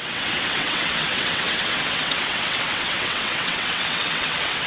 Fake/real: fake